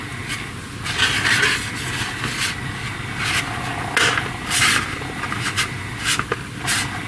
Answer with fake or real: real